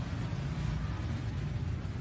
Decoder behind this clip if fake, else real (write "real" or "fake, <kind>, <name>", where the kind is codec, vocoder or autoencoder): real